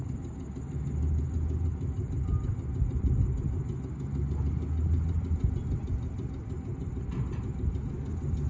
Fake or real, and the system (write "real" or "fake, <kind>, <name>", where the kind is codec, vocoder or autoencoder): real